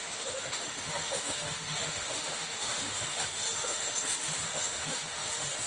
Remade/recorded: remade